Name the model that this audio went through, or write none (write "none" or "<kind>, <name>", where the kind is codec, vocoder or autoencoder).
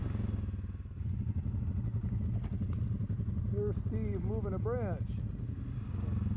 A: none